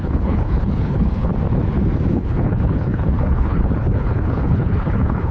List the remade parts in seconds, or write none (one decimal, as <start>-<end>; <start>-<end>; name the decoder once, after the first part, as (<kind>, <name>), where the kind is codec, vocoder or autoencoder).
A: 0.0-1.3 (codec, HILCodec); 2.1-5.3